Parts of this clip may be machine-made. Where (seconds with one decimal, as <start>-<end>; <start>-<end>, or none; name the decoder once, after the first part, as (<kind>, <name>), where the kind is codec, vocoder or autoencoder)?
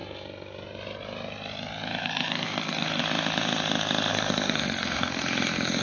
2.0-3.0 (codec, SNAC); 4.1-5.2